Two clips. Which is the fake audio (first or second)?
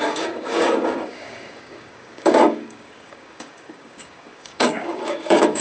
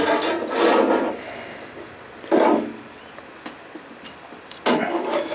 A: first